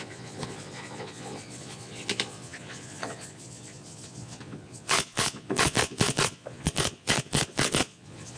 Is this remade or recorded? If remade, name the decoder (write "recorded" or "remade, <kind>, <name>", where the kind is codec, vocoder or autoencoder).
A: remade, vocoder, Vocos